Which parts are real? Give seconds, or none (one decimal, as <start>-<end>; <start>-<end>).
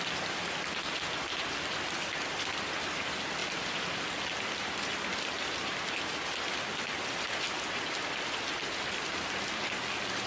0.0-3.4; 4.0-10.3